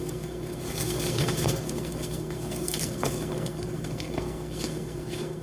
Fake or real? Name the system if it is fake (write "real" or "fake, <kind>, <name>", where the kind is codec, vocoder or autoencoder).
fake, codec, SNAC